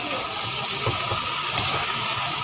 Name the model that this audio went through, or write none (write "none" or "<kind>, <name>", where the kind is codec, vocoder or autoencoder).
none